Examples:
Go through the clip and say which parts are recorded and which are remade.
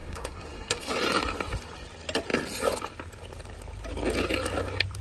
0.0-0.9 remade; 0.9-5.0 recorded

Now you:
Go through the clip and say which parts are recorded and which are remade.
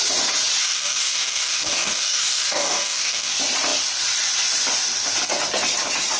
0.0-0.6 recorded; 0.6-3.3 remade; 3.3-6.2 recorded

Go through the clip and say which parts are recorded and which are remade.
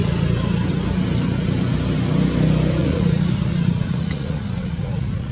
0.0-2.8 recorded; 2.8-5.3 remade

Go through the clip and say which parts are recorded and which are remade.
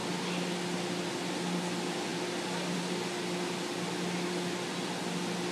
0.0-5.5 recorded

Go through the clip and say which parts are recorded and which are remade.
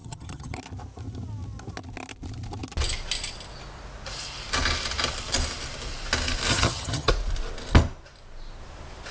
0.0-0.6 remade; 0.6-6.5 recorded; 6.5-7.1 remade; 7.1-9.1 recorded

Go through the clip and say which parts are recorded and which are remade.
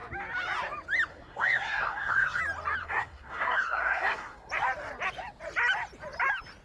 0.0-1.1 recorded; 1.1-2.4 remade; 2.4-2.8 recorded; 2.8-4.5 remade; 4.5-6.6 recorded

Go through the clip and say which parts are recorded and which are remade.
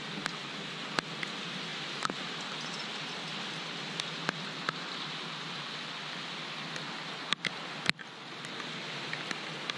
0.0-9.8 recorded